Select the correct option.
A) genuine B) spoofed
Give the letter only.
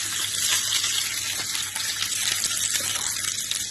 A